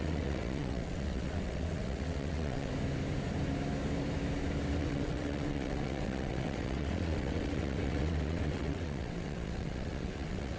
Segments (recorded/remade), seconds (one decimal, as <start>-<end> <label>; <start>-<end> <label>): 0.0-2.7 remade; 2.7-4.8 recorded; 4.8-10.6 remade